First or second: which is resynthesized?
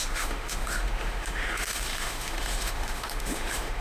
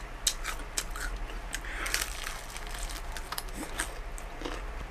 first